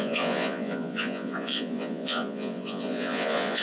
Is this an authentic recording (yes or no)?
no